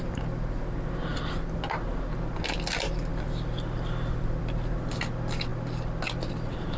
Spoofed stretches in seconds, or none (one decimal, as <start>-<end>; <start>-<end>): 1.1-1.6; 3.1-4.4

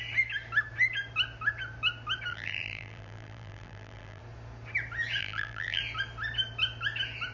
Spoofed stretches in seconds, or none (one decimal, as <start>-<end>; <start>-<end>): 2.3-4.2; 5.2-5.8

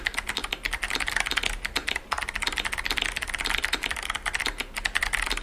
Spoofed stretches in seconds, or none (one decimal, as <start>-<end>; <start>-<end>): none

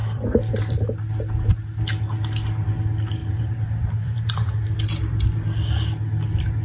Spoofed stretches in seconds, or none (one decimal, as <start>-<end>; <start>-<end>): 0.0-0.8; 3.2-4.5

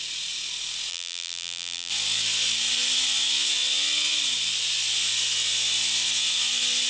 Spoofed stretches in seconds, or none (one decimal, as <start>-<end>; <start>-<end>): 0.9-1.9